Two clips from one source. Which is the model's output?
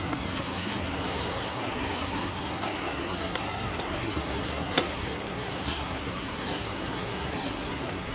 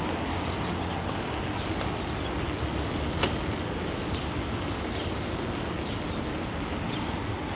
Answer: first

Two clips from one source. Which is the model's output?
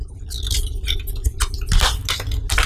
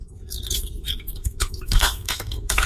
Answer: second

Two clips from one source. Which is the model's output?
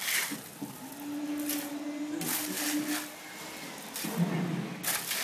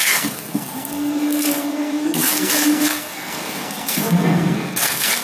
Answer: second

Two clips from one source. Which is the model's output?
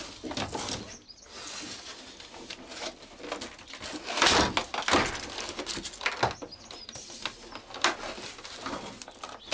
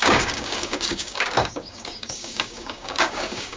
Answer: second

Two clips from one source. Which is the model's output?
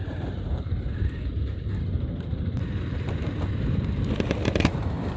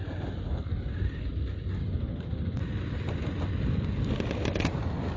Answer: first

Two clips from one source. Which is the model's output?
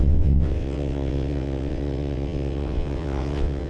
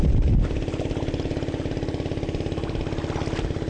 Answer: first